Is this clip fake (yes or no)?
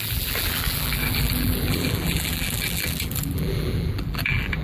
yes